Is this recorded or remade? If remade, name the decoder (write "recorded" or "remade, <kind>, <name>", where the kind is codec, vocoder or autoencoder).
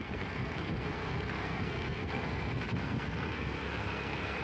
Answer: remade, codec, SNAC